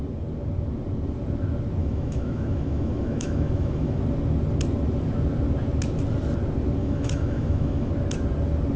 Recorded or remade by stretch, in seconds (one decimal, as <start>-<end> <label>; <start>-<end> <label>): 0.0-1.8 recorded; 1.8-4.0 remade; 4.0-6.8 recorded; 6.8-7.9 remade; 7.9-8.8 recorded